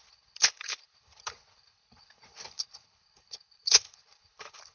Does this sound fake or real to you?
fake